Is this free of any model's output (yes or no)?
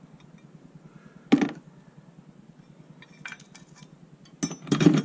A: yes